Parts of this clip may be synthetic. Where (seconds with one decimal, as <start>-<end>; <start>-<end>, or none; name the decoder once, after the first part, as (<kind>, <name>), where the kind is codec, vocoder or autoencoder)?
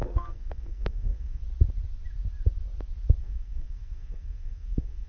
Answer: 0.0-1.4 (codec, SNAC); 3.2-5.1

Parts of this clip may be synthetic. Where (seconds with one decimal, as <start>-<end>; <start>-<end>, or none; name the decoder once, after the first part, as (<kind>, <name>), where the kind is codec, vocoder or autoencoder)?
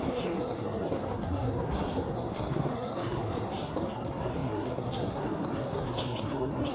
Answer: 0.0-6.7 (codec, SNAC)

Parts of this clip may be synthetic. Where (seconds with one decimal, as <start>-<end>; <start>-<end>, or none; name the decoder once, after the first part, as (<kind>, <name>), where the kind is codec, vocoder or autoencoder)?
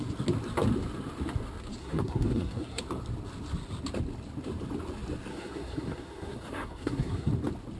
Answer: 1.8-2.8 (codec, SNAC); 5.3-7.3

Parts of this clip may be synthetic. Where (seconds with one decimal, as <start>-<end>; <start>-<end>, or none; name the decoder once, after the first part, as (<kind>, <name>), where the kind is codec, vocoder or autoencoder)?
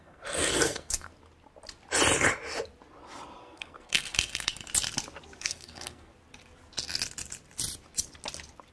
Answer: 0.0-1.1 (codec, SNAC); 3.4-4.7; 5.4-6.1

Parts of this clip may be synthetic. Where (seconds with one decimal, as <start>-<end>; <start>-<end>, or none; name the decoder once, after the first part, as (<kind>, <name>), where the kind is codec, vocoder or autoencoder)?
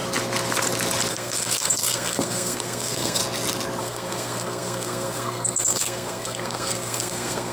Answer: 1.1-3.2 (codec, SNAC); 3.8-7.5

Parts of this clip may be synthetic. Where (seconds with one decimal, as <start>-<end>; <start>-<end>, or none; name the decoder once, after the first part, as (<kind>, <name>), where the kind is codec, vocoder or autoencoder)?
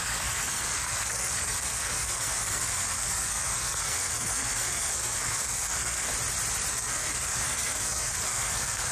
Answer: 0.0-6.1 (codec, SNAC); 6.7-8.9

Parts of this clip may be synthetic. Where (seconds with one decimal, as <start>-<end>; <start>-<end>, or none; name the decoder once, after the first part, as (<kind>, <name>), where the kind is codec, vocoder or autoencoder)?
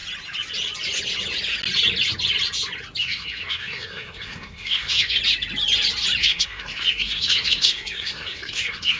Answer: 3.0-5.2 (codec, SNAC); 6.2-9.0